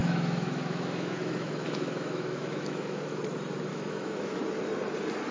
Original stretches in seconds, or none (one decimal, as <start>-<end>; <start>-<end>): 3.2-3.7; 4.4-5.3